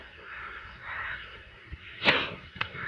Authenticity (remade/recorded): remade